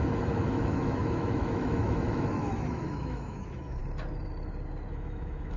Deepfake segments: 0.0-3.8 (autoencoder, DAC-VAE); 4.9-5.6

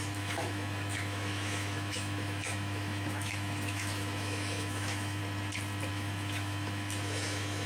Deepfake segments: 0.0-5.2 (autoencoder, DAC-VAE); 5.9-7.7